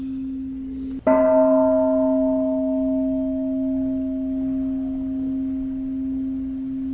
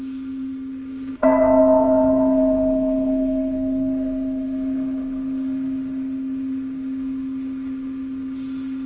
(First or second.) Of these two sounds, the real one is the first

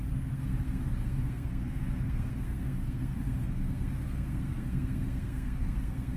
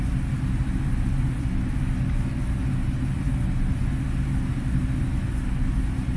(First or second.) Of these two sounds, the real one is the second